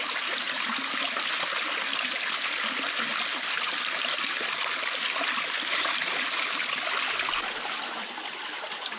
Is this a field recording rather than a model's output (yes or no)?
yes